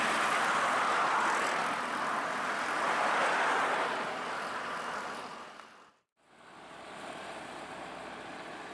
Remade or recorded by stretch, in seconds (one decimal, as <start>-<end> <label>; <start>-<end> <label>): 0.0-8.7 recorded